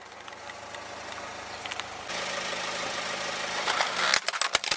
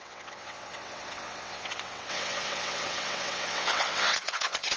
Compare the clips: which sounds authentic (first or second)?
first